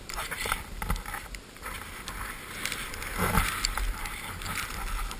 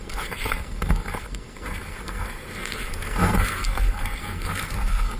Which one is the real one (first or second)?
first